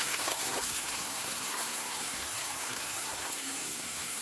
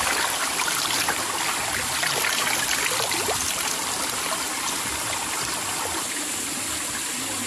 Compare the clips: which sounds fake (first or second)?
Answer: first